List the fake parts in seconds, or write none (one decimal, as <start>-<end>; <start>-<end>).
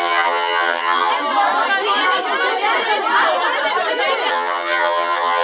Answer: 0.0-1.1; 4.3-5.4